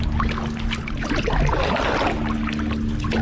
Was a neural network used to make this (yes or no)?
no